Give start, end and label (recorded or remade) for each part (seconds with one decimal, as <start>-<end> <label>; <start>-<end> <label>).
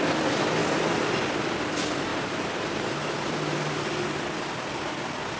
0.0-0.6 recorded; 0.6-1.2 remade; 1.2-2.1 recorded; 2.1-3.1 remade; 3.1-5.4 recorded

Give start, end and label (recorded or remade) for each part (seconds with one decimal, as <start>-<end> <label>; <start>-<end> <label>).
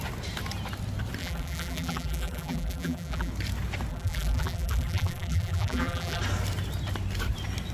0.0-1.2 recorded; 1.2-3.3 remade; 3.3-3.9 recorded; 3.9-6.2 remade; 6.2-7.7 recorded